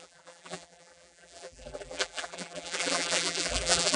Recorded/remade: remade